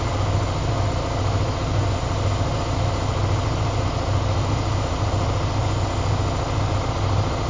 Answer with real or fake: real